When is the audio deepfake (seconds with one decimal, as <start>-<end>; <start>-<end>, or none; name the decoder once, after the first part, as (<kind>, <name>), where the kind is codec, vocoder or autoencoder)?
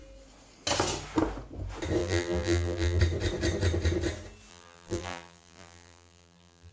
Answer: 2.0-3.0 (vocoder, BigVGAN v2); 4.5-6.7